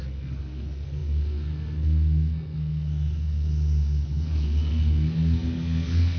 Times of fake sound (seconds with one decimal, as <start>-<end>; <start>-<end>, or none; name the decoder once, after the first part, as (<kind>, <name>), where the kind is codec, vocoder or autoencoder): 0.0-6.2 (codec, SNAC)